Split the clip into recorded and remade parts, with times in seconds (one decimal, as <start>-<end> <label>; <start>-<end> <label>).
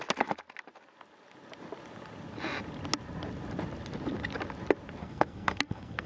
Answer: 0.0-5.0 recorded; 5.0-6.1 remade